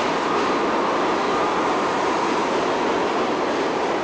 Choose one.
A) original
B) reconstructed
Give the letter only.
A